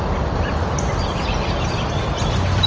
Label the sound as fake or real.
real